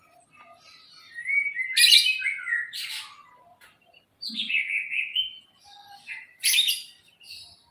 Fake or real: real